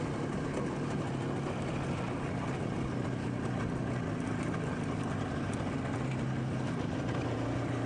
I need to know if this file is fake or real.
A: real